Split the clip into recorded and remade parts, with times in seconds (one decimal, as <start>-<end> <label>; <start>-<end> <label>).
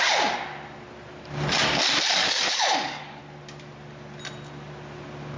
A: 0.0-2.2 recorded; 2.2-3.2 remade; 3.2-5.4 recorded